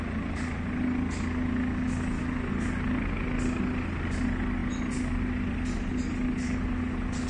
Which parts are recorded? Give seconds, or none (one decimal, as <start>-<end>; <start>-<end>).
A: 0.0-7.3